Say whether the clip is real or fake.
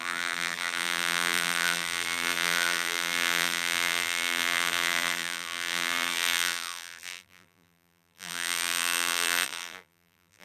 fake